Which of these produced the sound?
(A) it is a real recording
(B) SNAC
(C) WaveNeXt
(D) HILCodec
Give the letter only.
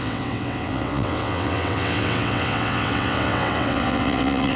C